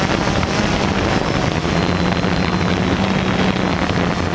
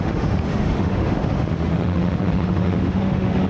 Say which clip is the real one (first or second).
first